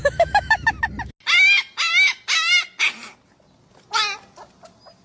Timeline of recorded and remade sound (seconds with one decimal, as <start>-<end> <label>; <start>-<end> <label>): 0.0-0.7 remade; 0.7-5.0 recorded